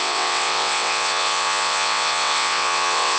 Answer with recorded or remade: remade